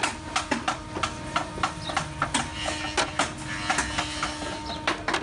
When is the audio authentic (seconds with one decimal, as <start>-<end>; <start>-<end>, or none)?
0.0-5.2